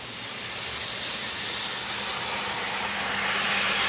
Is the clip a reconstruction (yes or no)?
no